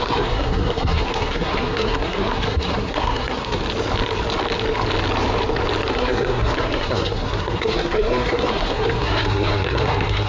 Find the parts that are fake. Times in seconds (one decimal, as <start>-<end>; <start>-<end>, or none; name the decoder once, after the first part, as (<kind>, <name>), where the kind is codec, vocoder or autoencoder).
0.0-3.6 (codec, SNAC); 5.9-10.3